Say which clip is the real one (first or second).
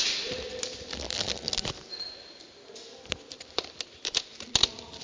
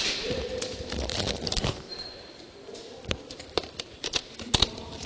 first